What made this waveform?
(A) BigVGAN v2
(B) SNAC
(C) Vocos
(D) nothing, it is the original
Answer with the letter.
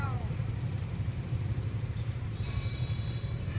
A